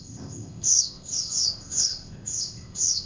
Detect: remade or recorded remade